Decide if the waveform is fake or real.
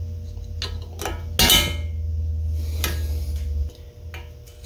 real